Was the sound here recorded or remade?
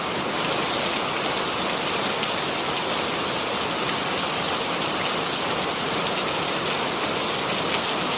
recorded